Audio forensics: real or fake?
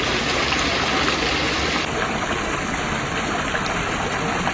real